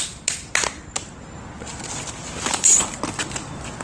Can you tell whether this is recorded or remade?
recorded